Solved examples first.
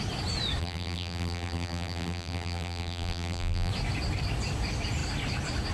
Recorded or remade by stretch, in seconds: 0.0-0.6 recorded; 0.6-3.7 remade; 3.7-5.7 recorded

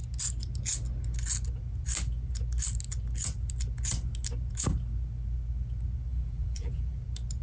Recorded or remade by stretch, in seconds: 0.0-6.1 recorded; 6.1-7.0 remade; 7.0-7.4 recorded

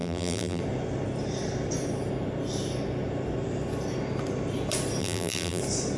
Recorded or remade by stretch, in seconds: 0.0-0.6 remade; 0.6-5.0 recorded; 5.0-5.6 remade; 5.6-6.0 recorded

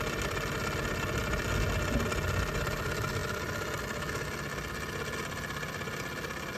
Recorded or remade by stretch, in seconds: 0.0-3.2 recorded; 3.2-3.8 remade; 3.8-6.6 recorded

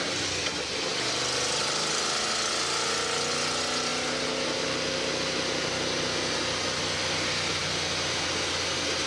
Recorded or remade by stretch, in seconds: 0.0-9.1 recorded

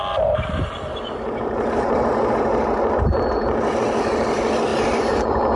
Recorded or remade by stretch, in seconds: 0.0-0.9 recorded; 0.9-2.3 remade; 2.3-3.1 recorded; 3.1-3.7 remade; 3.7-4.7 recorded; 4.7-5.6 remade

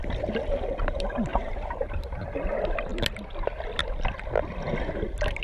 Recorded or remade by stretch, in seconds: 0.0-1.3 recorded; 1.3-2.2 remade; 2.2-5.4 recorded

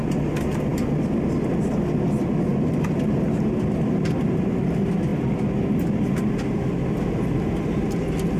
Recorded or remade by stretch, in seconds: 0.0-8.4 recorded